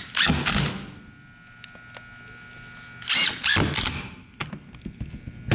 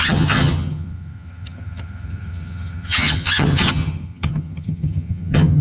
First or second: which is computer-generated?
second